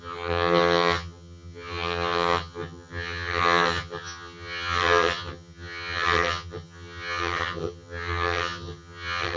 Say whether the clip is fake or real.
fake